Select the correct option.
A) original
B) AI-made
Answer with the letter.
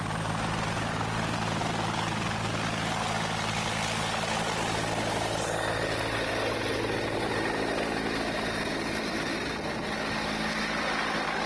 A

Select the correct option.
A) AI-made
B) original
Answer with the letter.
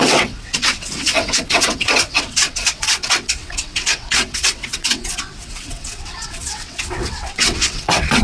A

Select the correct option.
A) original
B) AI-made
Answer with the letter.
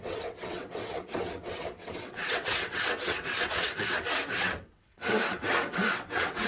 B